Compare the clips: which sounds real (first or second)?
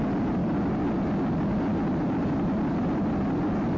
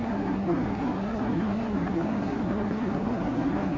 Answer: first